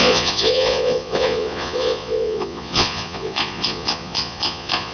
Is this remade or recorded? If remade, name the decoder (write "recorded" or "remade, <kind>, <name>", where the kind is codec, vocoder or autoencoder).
remade, vocoder, Vocos